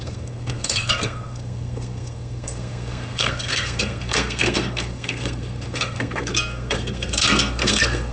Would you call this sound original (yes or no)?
no